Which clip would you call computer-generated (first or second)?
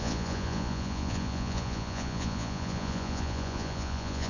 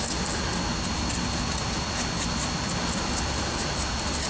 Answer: first